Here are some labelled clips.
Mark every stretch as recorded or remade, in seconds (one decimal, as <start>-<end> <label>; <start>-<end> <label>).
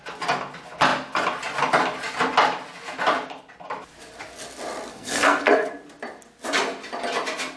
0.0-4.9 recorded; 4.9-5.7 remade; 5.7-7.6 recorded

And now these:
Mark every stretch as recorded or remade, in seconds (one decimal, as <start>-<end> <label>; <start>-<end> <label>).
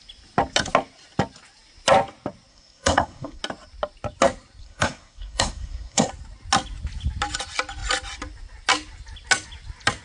0.0-2.5 recorded; 2.5-3.4 remade; 3.4-4.6 recorded; 4.6-6.1 remade; 6.1-10.0 recorded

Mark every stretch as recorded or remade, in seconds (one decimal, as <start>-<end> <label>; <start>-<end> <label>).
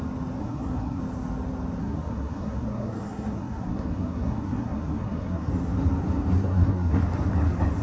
0.0-0.4 recorded; 0.4-1.0 remade; 1.0-1.8 recorded; 1.8-5.5 remade; 5.5-6.4 recorded; 6.4-7.0 remade; 7.0-7.8 recorded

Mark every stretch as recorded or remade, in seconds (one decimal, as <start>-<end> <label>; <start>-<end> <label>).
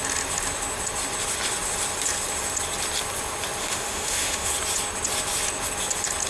0.0-3.6 recorded; 3.6-4.5 remade; 4.5-6.3 recorded